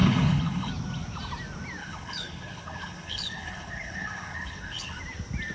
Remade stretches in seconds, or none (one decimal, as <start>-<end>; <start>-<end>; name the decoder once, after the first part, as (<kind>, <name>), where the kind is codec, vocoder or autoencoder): 0.0-0.7 (codec, HILCodec); 1.8-5.0